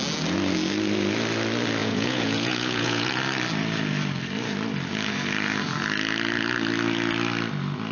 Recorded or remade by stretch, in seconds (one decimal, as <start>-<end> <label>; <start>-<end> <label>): 0.0-1.8 recorded; 1.8-3.1 remade; 3.1-7.9 recorded